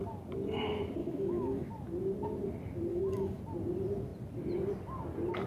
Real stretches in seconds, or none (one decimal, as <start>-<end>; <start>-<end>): 0.0-1.0; 1.7-2.9; 3.4-5.5